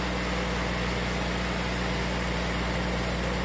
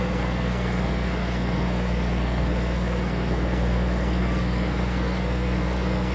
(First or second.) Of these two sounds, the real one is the first